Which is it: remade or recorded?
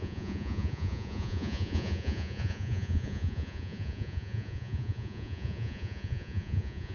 remade